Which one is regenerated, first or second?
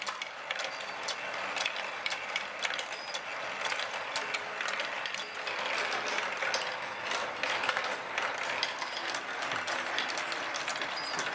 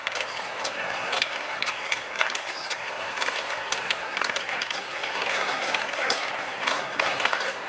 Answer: second